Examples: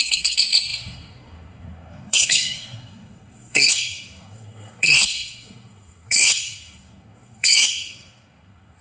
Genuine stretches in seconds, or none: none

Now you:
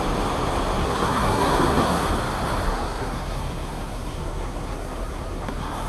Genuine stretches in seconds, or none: 0.0-0.8; 2.1-2.7

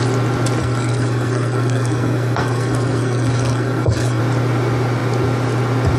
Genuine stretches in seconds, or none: 0.0-0.6; 4.2-6.0

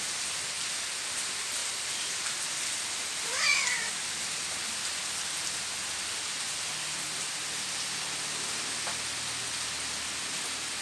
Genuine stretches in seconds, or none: 0.0-10.8

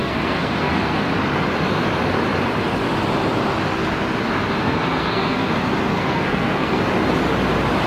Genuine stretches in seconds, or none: 1.1-4.6; 5.5-5.9; 6.8-7.9

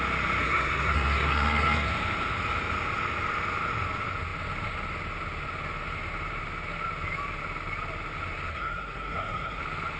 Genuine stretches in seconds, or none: 0.0-0.4; 1.9-8.5; 9.6-10.0

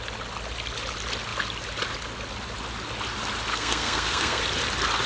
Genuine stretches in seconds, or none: 0.0-3.5; 4.4-5.1